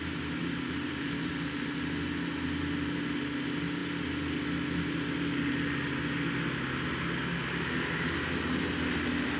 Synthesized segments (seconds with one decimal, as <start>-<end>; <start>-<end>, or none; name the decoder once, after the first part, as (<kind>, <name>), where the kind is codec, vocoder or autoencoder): 0.4-1.3 (vocoder, BigVGAN v2)